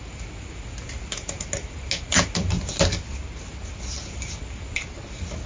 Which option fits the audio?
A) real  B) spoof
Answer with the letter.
A